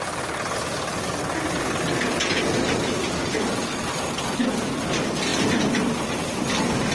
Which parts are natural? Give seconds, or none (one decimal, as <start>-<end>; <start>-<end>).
0.0-6.9